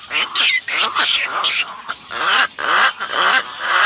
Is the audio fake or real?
real